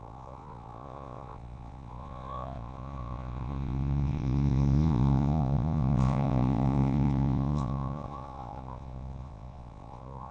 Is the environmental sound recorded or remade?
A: remade